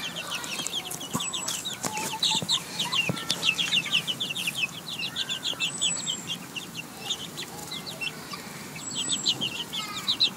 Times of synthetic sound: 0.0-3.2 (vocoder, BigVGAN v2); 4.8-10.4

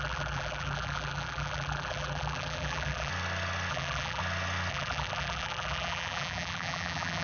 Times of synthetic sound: 0.0-3.1 (vocoder, BigVGAN v2); 3.7-4.2; 4.7-7.2

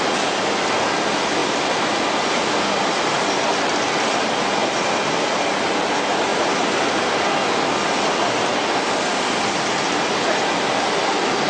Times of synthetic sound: 1.4-2.2 (vocoder, BigVGAN v2); 4.6-5.2

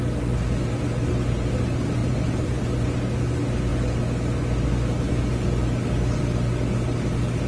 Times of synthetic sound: 2.0-2.6 (vocoder, BigVGAN v2)

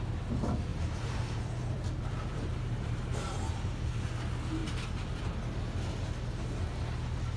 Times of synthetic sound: 0.7-3.0 (vocoder, BigVGAN v2); 4.6-5.2